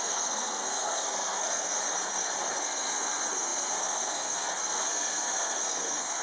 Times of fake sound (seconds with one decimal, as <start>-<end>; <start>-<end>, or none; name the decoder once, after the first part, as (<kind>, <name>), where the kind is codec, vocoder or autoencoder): 0.0-1.8 (codec, SNAC); 2.6-6.2